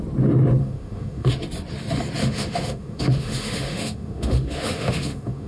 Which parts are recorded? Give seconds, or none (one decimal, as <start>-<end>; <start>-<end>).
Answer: 0.0-0.6; 1.3-2.2